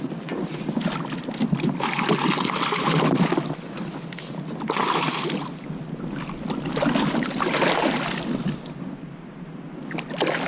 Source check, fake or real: real